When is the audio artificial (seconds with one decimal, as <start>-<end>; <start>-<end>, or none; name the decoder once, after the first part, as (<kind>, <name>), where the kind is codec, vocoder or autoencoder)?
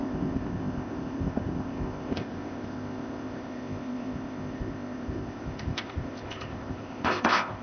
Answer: 0.0-7.6 (codec, ZipCodec)